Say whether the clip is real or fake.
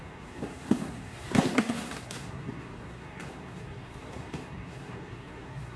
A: fake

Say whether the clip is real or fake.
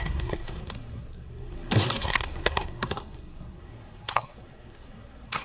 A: fake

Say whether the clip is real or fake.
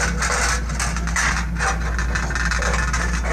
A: real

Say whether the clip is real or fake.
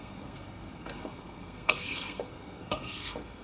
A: fake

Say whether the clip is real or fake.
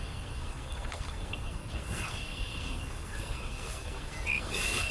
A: fake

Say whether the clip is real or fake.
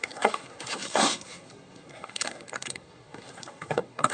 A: fake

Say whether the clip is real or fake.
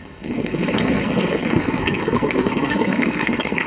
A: fake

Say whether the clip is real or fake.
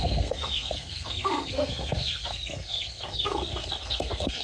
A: fake